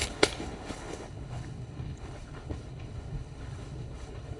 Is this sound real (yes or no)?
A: no